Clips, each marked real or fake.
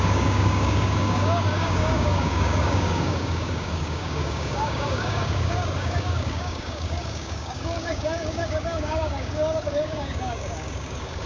fake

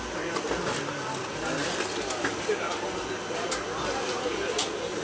real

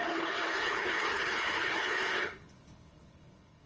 fake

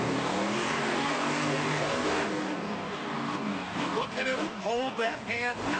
fake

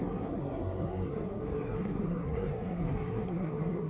fake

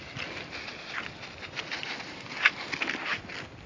real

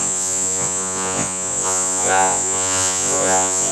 fake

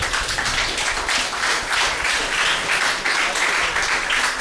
real